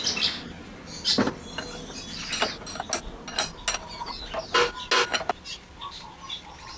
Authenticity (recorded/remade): recorded